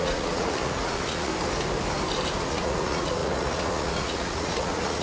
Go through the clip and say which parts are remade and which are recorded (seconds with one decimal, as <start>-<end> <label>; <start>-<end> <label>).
0.0-1.3 remade; 1.3-2.5 recorded; 2.5-5.0 remade